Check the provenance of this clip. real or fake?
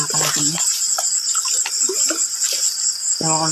real